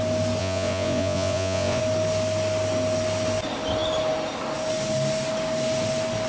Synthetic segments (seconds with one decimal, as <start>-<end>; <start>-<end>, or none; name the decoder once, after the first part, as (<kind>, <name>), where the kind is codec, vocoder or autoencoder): 0.4-1.8 (vocoder, Vocos)